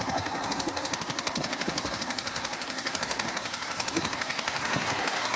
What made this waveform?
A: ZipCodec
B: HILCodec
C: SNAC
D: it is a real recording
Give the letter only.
C